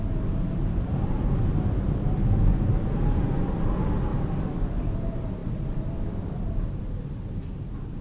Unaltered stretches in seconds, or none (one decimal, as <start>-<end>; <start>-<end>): 0.0-8.0

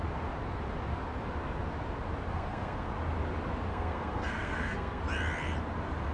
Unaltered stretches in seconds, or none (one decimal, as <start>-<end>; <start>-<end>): 0.0-2.3; 2.9-3.7; 5.0-6.1